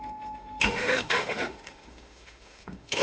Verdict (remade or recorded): remade